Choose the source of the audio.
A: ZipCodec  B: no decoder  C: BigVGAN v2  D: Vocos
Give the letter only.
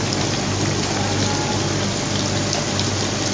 B